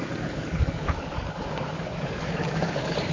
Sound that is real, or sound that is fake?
fake